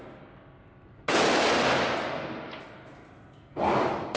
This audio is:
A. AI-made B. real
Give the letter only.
B